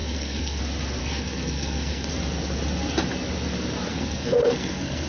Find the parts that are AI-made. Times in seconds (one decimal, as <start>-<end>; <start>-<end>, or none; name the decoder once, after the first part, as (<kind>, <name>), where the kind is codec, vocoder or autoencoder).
0.0-0.6 (codec, SNAC); 1.0-2.1; 3.9-5.1